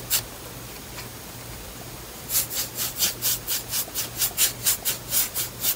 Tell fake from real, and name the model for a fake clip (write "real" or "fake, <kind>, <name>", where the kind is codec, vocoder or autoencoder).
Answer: real